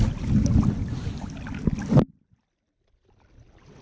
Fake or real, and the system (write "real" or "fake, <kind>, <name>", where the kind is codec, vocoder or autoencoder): real